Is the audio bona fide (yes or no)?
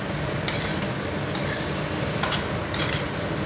yes